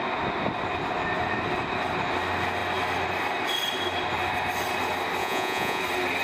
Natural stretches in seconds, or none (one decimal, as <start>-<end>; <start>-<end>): 0.0-5.2; 5.8-6.2